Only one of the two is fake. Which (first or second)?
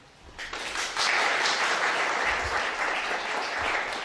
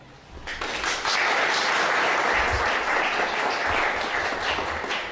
first